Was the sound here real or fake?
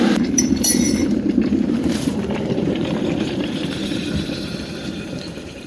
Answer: fake